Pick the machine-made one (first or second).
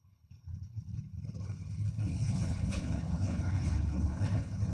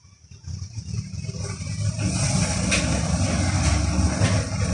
first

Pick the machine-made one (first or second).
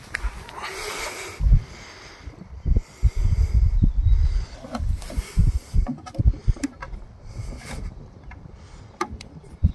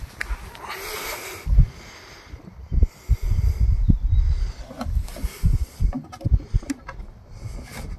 first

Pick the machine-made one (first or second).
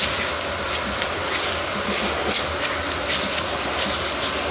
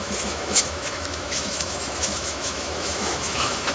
second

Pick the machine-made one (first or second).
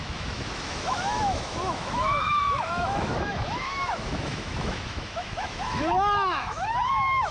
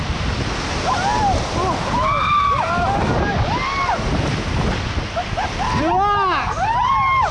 first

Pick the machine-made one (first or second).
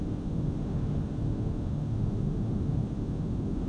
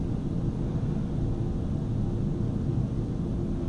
first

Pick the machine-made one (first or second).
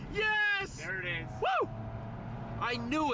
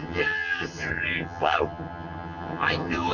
second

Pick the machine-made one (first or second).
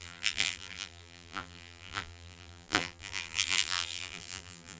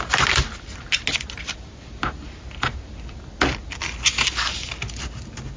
first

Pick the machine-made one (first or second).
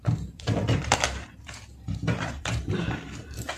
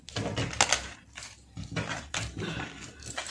first